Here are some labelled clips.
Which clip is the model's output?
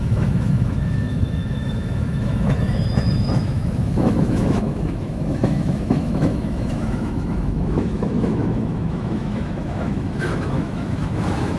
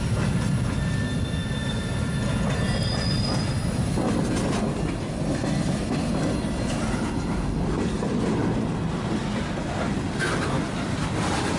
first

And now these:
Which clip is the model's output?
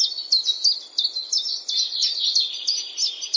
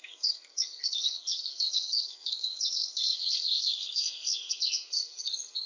second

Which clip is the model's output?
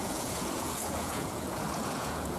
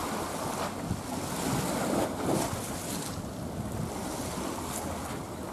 first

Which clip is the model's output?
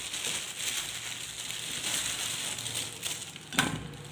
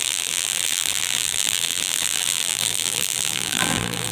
second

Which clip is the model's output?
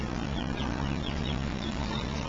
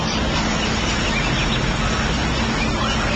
first